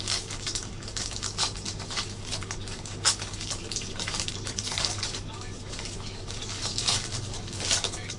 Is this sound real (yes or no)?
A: no